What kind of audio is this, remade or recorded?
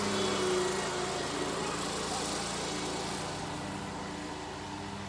recorded